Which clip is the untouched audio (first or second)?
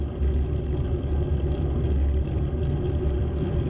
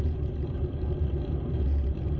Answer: first